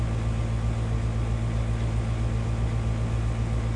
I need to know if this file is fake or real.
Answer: real